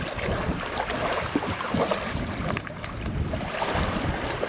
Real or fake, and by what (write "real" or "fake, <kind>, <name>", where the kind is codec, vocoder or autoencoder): real